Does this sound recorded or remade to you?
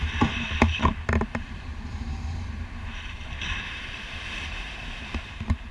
remade